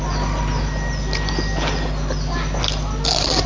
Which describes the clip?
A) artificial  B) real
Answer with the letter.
B